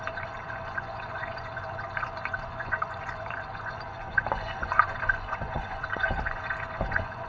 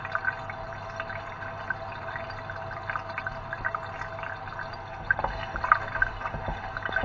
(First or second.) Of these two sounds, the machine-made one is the first